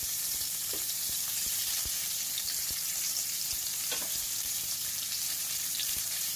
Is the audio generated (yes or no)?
yes